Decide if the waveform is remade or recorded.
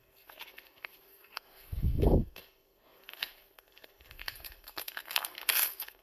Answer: remade